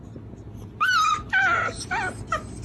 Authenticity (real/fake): real